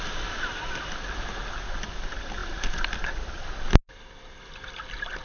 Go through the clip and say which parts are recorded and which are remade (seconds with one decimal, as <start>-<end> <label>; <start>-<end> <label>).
0.0-5.2 recorded